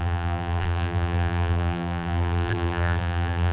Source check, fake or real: fake